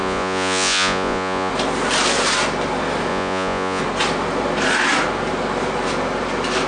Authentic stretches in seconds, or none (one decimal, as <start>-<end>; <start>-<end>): 1.5-3.1; 3.8-6.7